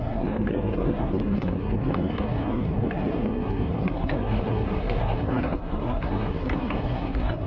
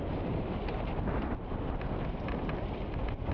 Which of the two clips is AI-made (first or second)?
first